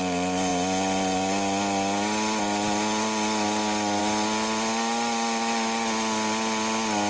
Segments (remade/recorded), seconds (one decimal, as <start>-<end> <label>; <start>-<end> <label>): 0.0-7.1 recorded